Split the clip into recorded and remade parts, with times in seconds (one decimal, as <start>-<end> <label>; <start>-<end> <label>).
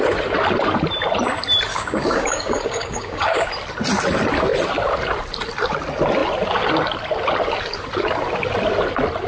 0.0-1.7 recorded; 1.7-3.5 remade; 3.5-9.3 recorded